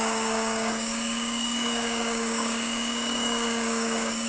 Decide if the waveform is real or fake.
fake